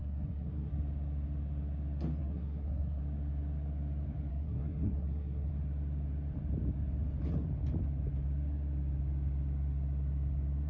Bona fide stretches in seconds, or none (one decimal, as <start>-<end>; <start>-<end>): 0.7-2.2; 3.0-4.3; 5.5-10.7